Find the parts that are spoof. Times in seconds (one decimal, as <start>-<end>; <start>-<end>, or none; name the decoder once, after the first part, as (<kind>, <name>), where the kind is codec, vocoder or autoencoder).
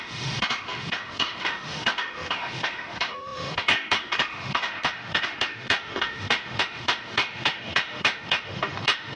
0.0-9.2 (autoencoder, DAC-VAE)